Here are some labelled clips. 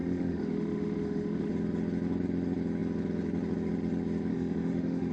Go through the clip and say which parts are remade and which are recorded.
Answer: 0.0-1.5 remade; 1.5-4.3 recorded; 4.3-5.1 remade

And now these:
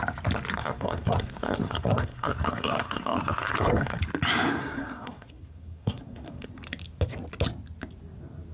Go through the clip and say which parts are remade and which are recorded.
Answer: 0.0-0.6 recorded; 0.6-4.0 remade; 4.0-4.6 recorded; 4.6-6.5 remade; 6.5-8.5 recorded

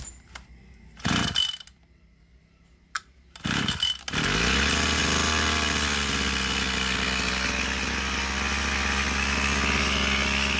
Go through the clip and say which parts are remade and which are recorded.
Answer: 0.0-2.3 recorded; 2.3-3.4 remade; 3.4-10.6 recorded

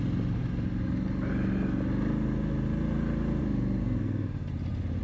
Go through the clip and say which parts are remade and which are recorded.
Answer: 0.0-3.8 recorded; 3.8-4.5 remade; 4.5-5.0 recorded

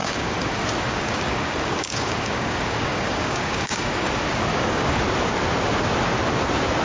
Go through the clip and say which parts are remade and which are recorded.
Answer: 0.0-4.1 remade; 4.1-4.5 recorded; 4.5-5.0 remade; 5.0-6.8 recorded

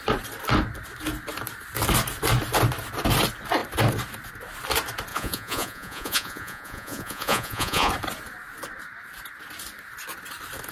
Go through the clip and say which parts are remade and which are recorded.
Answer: 0.0-5.1 recorded; 5.1-7.9 remade; 7.9-10.7 recorded

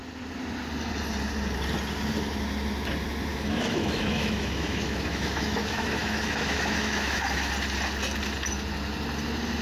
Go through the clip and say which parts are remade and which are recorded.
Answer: 0.0-3.3 recorded; 3.3-7.5 remade; 7.5-9.6 recorded